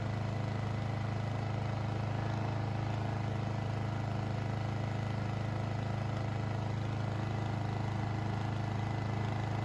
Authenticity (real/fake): real